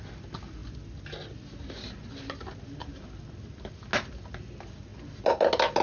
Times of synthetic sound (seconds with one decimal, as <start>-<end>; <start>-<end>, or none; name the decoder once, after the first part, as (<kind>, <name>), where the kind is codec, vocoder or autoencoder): none